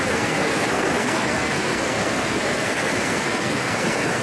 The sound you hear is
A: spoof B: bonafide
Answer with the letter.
A